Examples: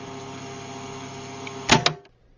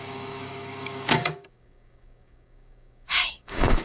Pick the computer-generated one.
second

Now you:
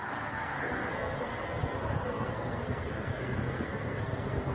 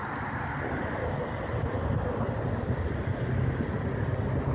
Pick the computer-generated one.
first